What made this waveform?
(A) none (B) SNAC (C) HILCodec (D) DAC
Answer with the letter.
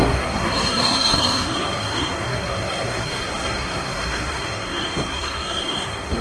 B